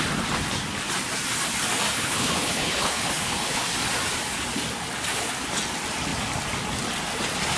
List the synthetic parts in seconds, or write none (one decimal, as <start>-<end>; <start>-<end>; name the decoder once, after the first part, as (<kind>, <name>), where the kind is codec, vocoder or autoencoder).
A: 1.9-3.6 (codec, HILCodec)